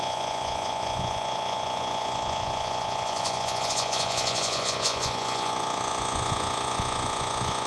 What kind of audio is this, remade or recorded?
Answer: remade